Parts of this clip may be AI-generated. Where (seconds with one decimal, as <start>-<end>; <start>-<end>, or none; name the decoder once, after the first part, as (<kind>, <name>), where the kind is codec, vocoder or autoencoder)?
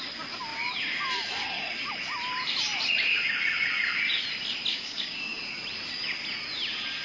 4.7-5.4 (codec, DAC)